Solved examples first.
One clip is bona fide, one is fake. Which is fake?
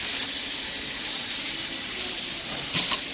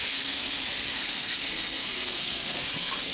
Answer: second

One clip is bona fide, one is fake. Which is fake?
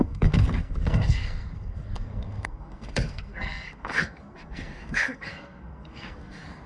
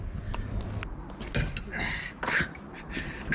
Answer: first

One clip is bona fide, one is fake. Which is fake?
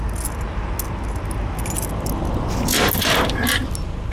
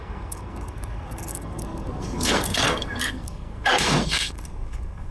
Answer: second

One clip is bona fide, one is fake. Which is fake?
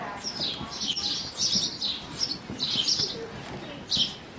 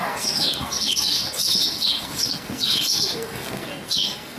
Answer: second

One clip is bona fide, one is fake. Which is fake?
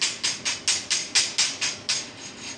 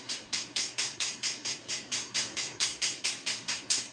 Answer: second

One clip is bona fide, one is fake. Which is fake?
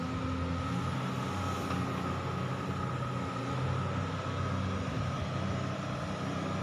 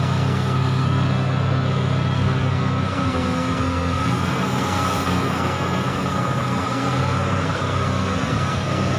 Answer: second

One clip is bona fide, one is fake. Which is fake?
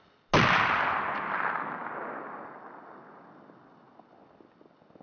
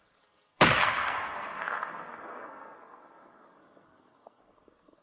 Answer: second